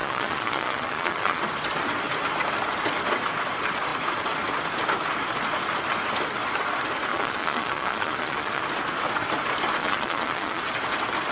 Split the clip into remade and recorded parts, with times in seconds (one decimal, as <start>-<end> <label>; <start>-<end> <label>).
0.0-1.4 remade; 1.4-7.1 recorded; 7.1-8.6 remade; 8.6-9.8 recorded; 9.8-10.6 remade; 10.6-11.3 recorded